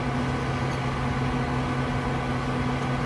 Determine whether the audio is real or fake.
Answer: real